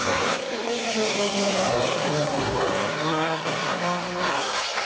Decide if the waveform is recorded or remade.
remade